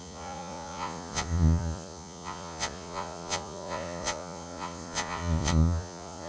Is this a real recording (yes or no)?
no